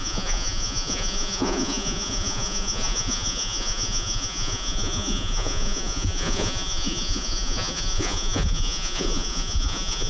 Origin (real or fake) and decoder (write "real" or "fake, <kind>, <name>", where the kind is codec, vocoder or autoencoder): fake, vocoder, Vocos